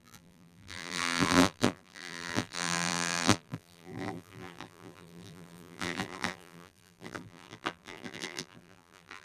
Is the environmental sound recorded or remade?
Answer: remade